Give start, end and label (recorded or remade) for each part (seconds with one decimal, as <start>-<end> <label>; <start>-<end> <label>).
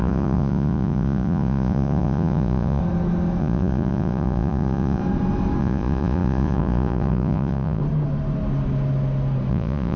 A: 0.0-2.8 remade; 2.8-3.4 recorded; 3.4-5.0 remade; 5.0-5.6 recorded; 5.6-7.8 remade; 7.8-9.5 recorded; 9.5-10.0 remade